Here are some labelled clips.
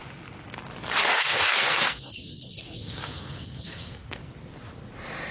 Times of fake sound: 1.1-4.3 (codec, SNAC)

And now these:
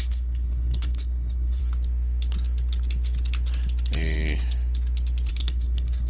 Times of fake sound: 0.0-1.6 (codec, SNAC); 5.3-6.1

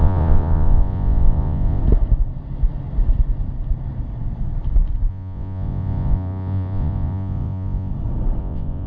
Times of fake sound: 0.0-1.8 (vocoder, Vocos); 5.1-7.9; 8.4-8.9

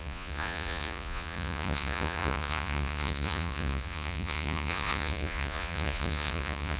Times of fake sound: 0.0-6.8 (vocoder, Vocos)